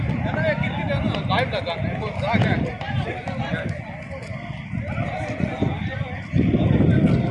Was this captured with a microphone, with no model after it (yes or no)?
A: yes